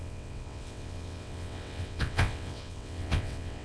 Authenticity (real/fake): fake